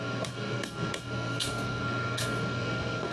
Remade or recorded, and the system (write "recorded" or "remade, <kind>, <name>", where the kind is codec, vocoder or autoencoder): remade, codec, SNAC